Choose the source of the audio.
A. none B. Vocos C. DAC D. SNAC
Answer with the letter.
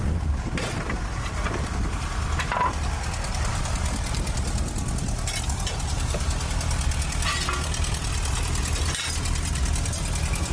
A